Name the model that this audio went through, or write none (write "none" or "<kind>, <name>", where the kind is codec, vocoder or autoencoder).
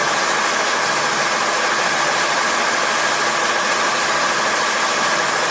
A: none